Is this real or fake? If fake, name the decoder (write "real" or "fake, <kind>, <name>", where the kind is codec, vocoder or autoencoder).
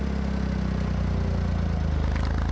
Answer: real